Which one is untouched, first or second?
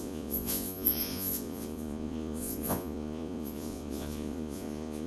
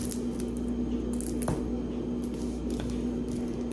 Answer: second